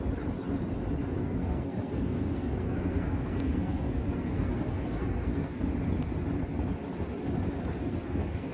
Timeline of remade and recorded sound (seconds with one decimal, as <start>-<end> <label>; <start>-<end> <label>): 0.0-1.2 recorded; 1.2-5.7 remade; 5.7-7.8 recorded; 7.8-8.5 remade